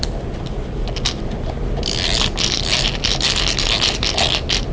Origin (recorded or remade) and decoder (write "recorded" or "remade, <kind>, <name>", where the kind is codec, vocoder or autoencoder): recorded